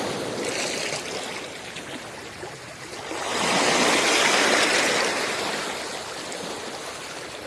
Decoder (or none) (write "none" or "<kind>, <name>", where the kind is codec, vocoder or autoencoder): none